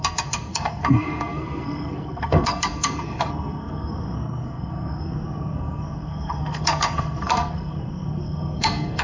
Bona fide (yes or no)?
no